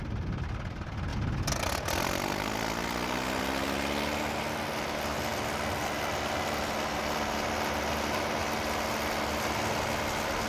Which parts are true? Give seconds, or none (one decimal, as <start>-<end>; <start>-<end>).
0.0-10.5